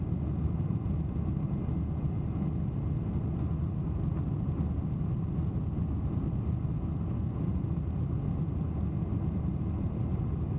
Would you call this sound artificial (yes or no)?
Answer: no